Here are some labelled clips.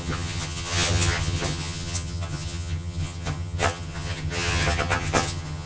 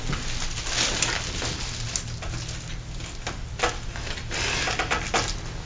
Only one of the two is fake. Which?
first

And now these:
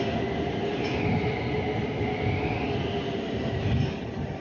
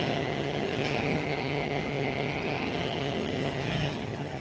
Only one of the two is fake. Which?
second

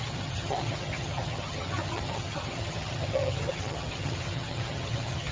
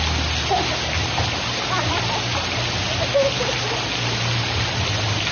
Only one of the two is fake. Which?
first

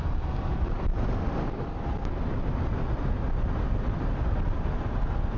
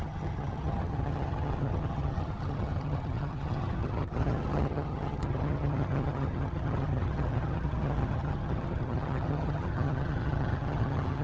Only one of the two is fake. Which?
second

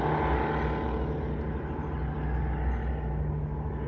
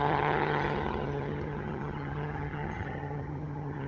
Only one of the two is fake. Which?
second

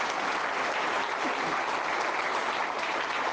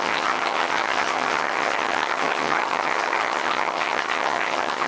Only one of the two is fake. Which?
second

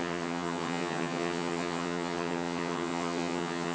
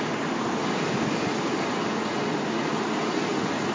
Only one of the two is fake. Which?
first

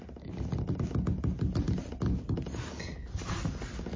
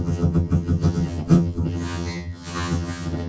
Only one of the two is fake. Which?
second